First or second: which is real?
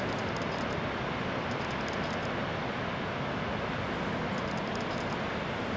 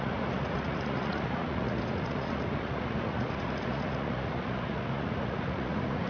first